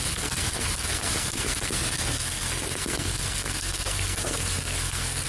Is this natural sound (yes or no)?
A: no